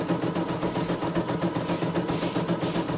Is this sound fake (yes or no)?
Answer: no